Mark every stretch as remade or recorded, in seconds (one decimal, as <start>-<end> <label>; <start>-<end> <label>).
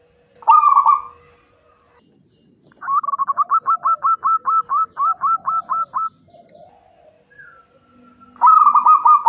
0.0-9.3 recorded